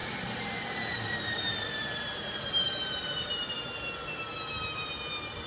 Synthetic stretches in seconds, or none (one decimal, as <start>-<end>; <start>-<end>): 0.0-3.3